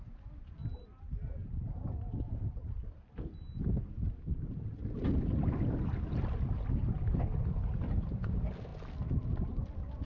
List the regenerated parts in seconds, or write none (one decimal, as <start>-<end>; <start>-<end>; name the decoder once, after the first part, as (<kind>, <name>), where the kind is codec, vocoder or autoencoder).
none